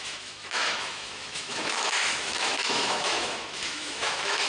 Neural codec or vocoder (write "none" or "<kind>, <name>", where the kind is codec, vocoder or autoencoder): autoencoder, DAC-VAE